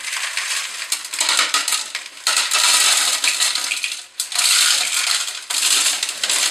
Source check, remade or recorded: recorded